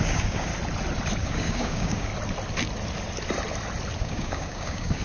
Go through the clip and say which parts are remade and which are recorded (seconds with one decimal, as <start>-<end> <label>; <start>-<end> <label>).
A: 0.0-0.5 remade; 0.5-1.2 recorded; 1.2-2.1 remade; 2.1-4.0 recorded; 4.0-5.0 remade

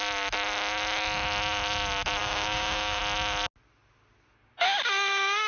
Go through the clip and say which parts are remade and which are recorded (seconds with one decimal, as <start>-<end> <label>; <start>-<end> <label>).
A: 0.0-2.2 recorded; 2.2-3.0 remade; 3.0-5.5 recorded

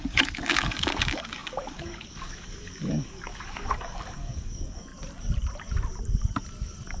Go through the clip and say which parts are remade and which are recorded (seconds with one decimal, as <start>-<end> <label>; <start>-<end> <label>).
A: 0.0-4.9 remade; 4.9-7.0 recorded

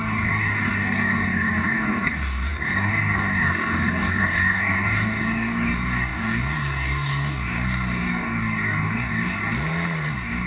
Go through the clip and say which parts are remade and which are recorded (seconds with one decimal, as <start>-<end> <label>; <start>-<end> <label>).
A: 0.0-9.4 remade; 9.4-10.1 recorded; 10.1-10.5 remade

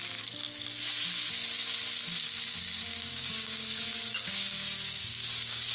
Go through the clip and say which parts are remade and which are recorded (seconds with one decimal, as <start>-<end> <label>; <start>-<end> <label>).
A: 0.0-2.1 recorded; 2.1-5.7 remade

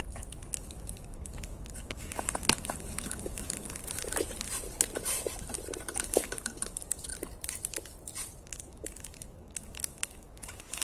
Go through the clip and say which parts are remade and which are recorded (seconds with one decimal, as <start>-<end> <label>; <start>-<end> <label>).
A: 0.0-3.8 remade; 3.8-5.9 recorded; 5.9-7.1 remade; 7.1-8.4 recorded; 8.4-10.8 remade

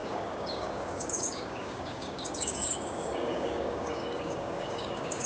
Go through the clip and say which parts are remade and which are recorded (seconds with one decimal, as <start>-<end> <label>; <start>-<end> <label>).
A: 0.0-5.3 remade

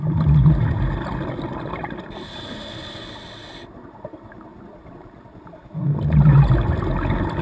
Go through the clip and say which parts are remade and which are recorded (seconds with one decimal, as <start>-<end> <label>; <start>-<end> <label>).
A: 0.0-7.4 recorded